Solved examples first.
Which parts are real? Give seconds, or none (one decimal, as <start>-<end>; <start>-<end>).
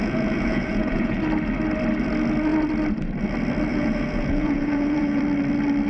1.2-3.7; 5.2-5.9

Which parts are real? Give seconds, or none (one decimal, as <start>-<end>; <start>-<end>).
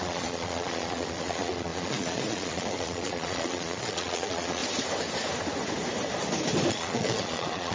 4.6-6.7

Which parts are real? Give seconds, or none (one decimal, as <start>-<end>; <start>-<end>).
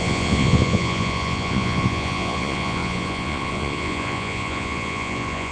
none